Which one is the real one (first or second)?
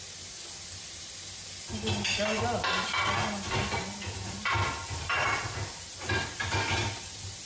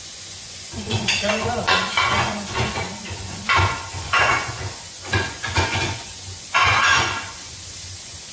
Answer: first